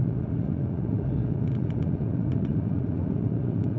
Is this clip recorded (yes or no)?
no